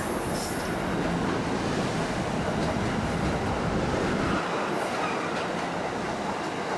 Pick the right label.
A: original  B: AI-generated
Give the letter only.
A